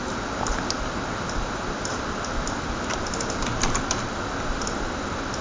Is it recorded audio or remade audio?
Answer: recorded